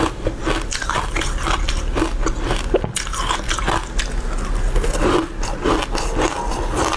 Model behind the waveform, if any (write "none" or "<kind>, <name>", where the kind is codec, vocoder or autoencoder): none